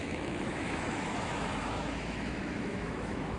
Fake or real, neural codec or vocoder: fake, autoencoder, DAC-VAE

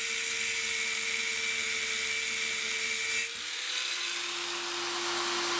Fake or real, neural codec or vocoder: real